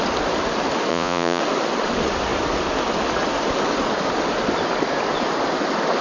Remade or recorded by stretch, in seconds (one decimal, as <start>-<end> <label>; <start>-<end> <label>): 0.0-0.9 recorded; 0.9-1.4 remade; 1.4-6.0 recorded